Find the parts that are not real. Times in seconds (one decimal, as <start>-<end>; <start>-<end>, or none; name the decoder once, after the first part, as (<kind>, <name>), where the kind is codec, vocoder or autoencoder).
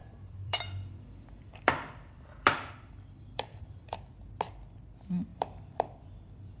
0.0-4.0 (vocoder, BigVGAN v2); 5.3-6.6